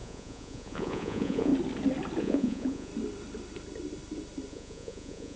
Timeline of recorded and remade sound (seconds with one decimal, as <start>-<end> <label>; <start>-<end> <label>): 0.0-1.5 remade; 1.5-2.2 recorded; 2.2-2.9 remade; 2.9-4.5 recorded; 4.5-5.4 remade